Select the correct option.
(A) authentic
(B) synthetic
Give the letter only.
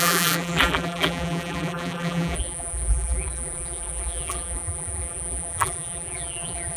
B